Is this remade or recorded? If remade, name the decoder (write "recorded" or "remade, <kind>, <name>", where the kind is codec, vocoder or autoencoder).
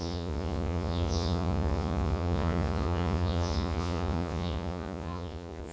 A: remade, vocoder, Vocos